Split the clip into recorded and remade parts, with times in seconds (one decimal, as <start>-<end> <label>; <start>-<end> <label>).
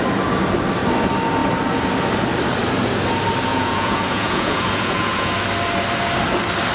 0.0-3.5 recorded; 3.5-5.3 remade; 5.3-6.7 recorded